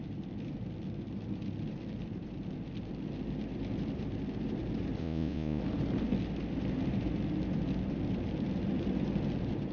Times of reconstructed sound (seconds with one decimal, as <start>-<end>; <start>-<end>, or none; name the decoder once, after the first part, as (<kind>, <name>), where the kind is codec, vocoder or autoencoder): 5.0-5.6 (vocoder, Vocos)